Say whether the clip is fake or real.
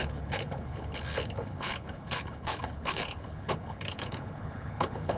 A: fake